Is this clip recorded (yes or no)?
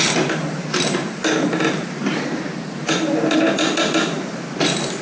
yes